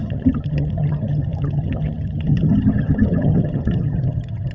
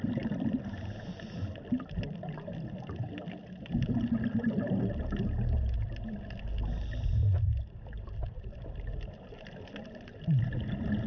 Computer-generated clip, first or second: first